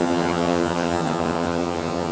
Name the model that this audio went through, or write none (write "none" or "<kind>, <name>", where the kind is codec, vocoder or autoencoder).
vocoder, HiFi-GAN